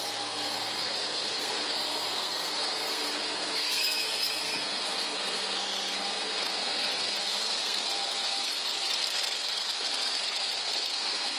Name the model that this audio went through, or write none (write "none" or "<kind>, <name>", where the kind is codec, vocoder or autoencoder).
codec, SNAC